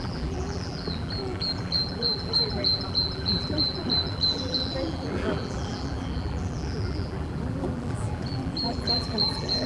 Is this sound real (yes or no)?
no